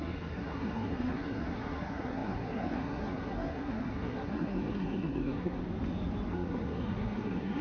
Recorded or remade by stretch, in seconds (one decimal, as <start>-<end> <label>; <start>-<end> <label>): 0.0-5.6 remade; 5.6-6.3 recorded; 6.3-7.6 remade